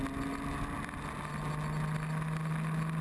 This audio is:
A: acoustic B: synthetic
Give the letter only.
A